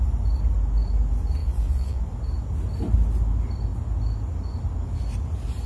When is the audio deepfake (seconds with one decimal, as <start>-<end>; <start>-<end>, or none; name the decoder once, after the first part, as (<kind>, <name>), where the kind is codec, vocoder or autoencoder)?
1.4-2.0 (vocoder, BigVGAN v2)